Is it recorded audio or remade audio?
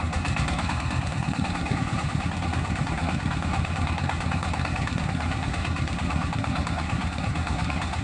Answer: remade